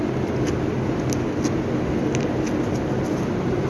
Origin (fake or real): real